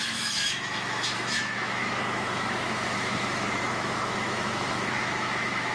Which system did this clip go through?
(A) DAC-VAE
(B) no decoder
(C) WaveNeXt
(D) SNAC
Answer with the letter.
A